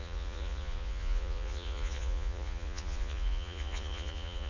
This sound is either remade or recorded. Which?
remade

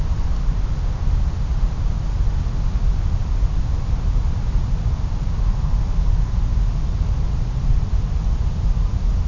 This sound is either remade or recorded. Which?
recorded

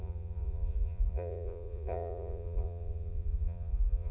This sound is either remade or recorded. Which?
remade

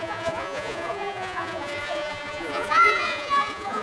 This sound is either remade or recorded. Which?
remade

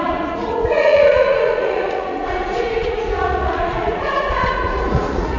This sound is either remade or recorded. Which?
remade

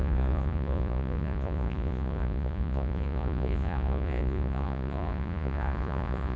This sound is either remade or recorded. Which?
remade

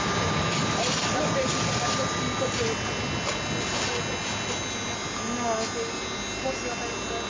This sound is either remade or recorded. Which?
recorded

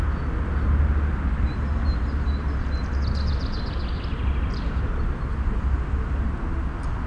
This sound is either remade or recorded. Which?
recorded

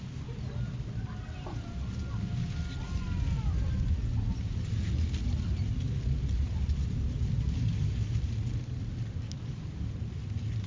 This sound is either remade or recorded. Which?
recorded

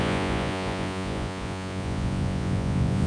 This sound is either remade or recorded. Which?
remade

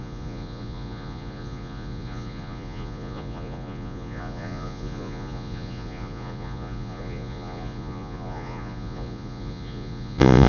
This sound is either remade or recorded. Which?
remade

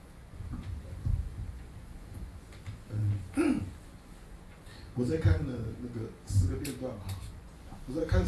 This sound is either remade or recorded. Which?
remade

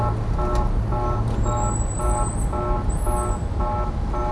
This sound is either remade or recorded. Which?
recorded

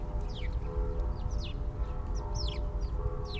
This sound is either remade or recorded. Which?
recorded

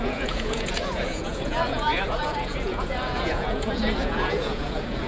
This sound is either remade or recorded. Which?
remade